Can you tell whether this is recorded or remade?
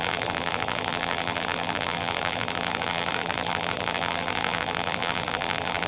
remade